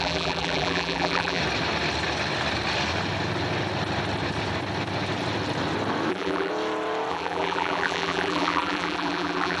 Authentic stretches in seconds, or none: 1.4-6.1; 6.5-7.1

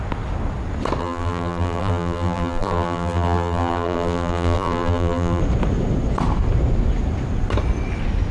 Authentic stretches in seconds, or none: 0.0-1.0; 5.4-8.3

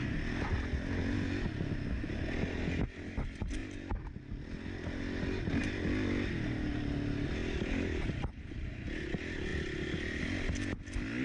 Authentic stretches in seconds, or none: 0.0-7.4; 8.7-9.5; 10.2-11.2

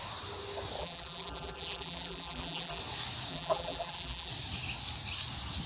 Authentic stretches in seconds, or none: 0.0-0.8; 2.8-3.3; 4.3-5.7

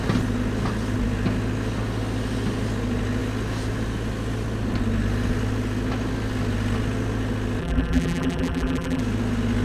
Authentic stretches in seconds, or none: 0.0-7.6; 9.0-9.6